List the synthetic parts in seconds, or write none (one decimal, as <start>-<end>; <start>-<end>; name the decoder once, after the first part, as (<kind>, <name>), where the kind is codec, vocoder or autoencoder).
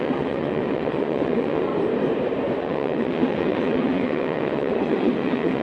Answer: 0.0-1.7 (vocoder, WaveNeXt); 2.6-5.6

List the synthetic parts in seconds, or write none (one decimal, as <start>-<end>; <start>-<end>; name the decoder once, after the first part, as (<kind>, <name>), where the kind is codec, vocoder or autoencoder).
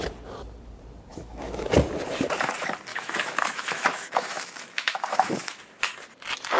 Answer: 1.1-1.7 (autoencoder, DAC-VAE); 2.9-5.6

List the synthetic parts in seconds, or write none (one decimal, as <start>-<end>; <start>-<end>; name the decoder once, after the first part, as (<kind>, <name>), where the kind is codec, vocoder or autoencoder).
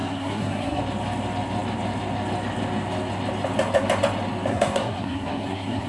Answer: 0.0-0.8 (codec, SNAC); 4.5-5.9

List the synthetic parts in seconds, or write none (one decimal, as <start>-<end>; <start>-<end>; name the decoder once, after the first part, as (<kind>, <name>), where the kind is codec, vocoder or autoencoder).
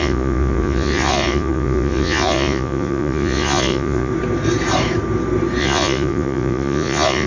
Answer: 0.0-4.1 (vocoder, Vocos); 5.6-7.3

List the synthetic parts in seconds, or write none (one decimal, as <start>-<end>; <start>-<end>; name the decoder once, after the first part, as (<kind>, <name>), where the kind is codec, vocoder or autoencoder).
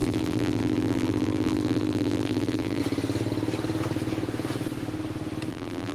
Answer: 0.0-2.8 (vocoder, BigVGAN v2); 5.5-5.9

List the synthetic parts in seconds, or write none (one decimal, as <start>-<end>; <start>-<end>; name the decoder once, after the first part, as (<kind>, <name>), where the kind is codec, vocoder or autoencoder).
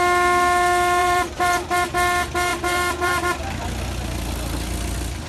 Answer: 1.0-1.7 (vocoder, BigVGAN v2); 2.5-3.4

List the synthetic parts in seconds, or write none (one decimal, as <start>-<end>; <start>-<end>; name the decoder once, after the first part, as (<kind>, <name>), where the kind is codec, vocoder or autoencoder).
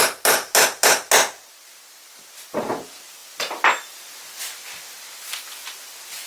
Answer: none